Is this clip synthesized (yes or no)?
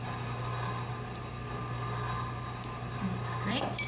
no